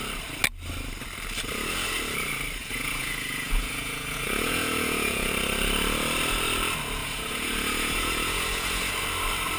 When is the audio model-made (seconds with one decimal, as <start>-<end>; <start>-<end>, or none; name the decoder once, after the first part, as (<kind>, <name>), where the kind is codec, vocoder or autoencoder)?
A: 2.6-5.3 (vocoder, Vocos); 7.0-8.9